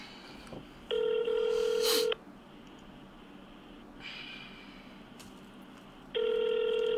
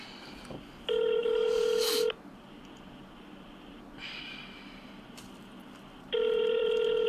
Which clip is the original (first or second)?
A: first